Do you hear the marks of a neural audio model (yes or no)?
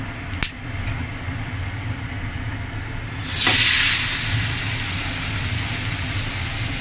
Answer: no